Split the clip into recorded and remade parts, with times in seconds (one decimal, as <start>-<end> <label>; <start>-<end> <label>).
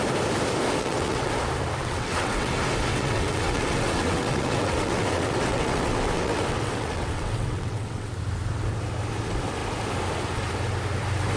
0.0-0.8 recorded; 0.8-1.3 remade; 1.3-1.8 recorded; 1.8-2.5 remade; 2.5-2.9 recorded; 2.9-8.1 remade; 8.1-11.4 recorded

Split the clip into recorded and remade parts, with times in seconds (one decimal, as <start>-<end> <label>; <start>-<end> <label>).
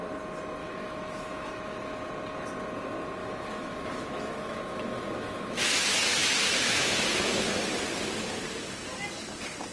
0.0-0.6 recorded; 0.6-2.1 remade; 2.1-3.2 recorded; 3.2-7.5 remade; 7.5-9.7 recorded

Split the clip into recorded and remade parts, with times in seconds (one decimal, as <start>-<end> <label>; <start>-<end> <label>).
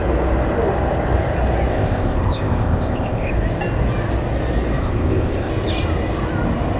0.0-1.7 recorded; 1.7-3.3 remade; 3.3-4.8 recorded; 4.8-5.5 remade; 5.5-6.8 recorded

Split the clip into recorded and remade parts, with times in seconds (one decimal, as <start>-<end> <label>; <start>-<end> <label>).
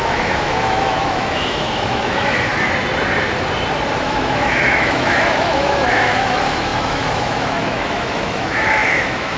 0.0-2.5 remade; 2.5-4.0 recorded; 4.0-9.4 remade